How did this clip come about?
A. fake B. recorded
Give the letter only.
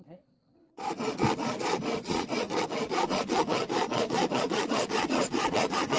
A